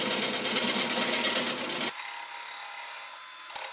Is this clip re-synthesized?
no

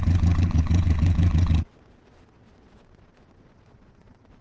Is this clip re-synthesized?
yes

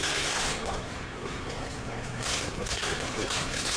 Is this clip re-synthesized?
yes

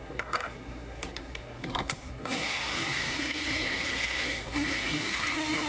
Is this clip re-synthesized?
yes